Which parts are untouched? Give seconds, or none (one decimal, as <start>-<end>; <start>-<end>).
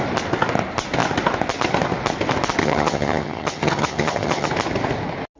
0.0-2.6; 4.5-5.4